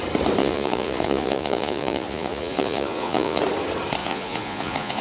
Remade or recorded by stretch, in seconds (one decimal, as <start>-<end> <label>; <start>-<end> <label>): 0.0-0.4 recorded; 0.4-3.4 remade; 3.4-4.0 recorded; 4.0-5.0 remade